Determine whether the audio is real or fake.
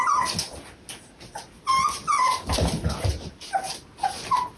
real